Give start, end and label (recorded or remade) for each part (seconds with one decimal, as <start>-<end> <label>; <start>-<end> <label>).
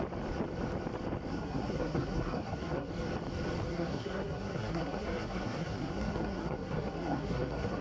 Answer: 0.0-1.3 recorded; 1.3-2.9 remade; 2.9-3.7 recorded; 3.7-7.8 remade